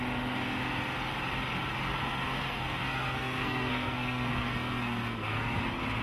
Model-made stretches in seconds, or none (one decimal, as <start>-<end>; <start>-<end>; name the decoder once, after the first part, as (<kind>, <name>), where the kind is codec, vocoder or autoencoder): 2.0-5.6 (codec, SNAC)

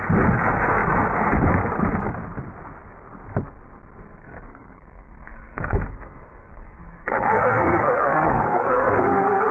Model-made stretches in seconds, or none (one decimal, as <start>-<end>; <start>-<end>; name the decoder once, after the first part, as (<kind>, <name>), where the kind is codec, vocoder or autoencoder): 4.2-9.5 (codec, SNAC)

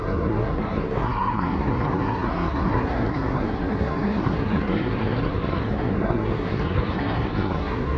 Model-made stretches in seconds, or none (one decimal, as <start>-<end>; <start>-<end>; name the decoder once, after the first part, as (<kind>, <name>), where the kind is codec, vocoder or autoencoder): 0.0-8.0 (codec, SNAC)

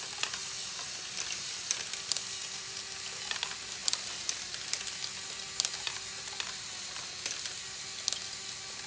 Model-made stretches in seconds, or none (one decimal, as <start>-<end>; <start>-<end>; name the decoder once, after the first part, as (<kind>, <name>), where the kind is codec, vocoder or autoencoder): none

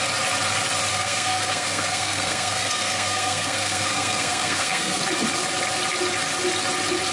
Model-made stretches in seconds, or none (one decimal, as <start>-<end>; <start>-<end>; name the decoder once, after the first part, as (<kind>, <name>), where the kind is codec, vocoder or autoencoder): 0.9-5.0 (codec, SNAC)

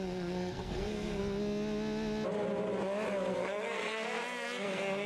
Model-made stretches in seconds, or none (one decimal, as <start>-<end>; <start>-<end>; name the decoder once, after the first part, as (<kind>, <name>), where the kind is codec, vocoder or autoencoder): 0.0-1.2 (codec, SNAC); 3.3-5.1